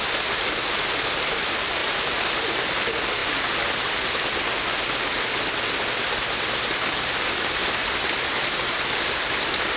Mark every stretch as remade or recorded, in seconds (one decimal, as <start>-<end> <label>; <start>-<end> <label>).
0.0-9.8 recorded